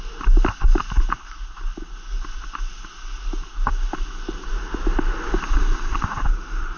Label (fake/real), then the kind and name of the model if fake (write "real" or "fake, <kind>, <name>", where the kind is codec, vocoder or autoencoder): real